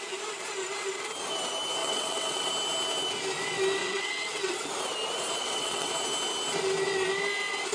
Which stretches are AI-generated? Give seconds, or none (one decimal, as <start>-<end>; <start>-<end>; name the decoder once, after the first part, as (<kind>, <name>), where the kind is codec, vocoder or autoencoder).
1.8-2.5 (vocoder, WaveNeXt); 3.8-4.7; 5.4-5.9